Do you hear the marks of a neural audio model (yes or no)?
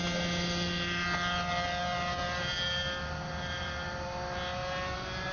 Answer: no